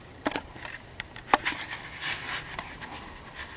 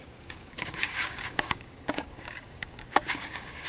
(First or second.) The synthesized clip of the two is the second